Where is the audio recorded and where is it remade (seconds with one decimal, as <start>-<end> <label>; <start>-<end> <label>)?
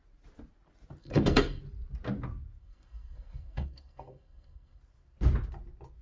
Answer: 0.0-1.0 recorded; 1.0-1.6 remade; 1.6-2.6 recorded; 2.6-4.8 remade; 4.8-6.0 recorded